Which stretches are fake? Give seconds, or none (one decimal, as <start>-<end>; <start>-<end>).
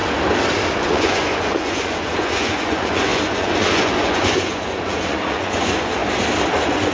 0.9-6.0; 6.5-6.9